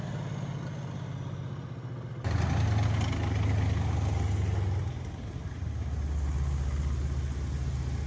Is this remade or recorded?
recorded